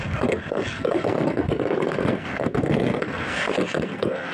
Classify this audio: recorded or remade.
remade